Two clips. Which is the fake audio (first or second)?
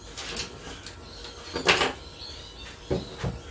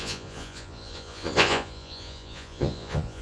second